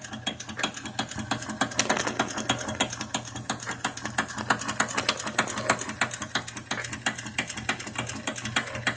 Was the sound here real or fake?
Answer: real